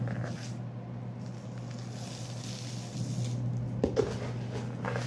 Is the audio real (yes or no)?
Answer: yes